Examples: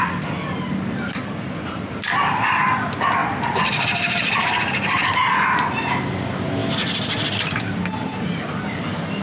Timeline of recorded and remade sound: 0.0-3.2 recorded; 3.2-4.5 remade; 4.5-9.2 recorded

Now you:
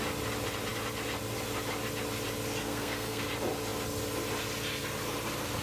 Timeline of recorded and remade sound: 0.0-2.6 recorded; 2.6-3.2 remade; 3.2-5.6 recorded

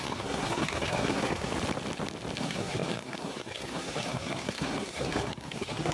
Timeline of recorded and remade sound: 0.0-1.5 remade; 1.5-2.4 recorded; 2.4-5.9 remade

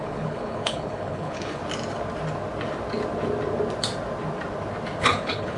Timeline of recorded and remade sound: 0.0-1.6 remade; 1.6-5.0 recorded; 5.0-5.6 remade

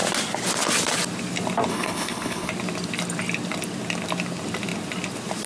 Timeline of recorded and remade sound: 0.0-1.7 recorded; 1.7-2.5 remade; 2.5-5.5 recorded